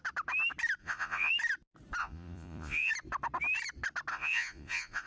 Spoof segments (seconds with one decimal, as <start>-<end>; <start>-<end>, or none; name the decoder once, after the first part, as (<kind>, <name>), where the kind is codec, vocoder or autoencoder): 0.8-1.3 (vocoder, Vocos); 2.0-2.9; 4.1-5.1